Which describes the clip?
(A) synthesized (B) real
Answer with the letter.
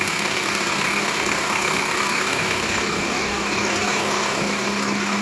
A